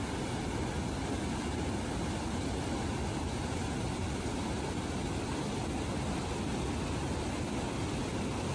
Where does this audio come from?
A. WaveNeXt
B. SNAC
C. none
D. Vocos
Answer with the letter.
C